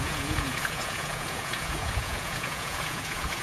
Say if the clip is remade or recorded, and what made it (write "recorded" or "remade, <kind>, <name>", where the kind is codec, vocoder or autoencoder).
remade, vocoder, Vocos